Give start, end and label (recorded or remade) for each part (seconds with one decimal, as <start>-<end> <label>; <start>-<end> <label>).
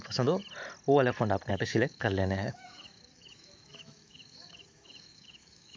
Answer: 0.0-0.4 remade; 0.4-1.5 recorded; 1.5-5.8 remade